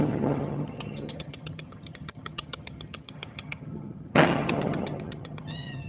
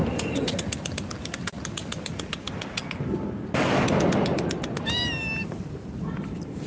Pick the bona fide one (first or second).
second